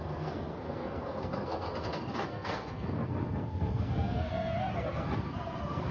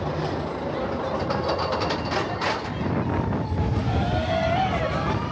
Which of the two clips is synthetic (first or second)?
first